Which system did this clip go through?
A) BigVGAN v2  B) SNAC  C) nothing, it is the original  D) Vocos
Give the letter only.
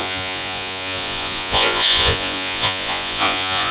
D